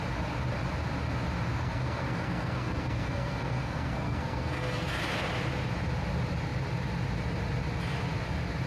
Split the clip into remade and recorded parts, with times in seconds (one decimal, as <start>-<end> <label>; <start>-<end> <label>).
0.0-1.5 recorded; 1.5-5.0 remade; 5.0-8.7 recorded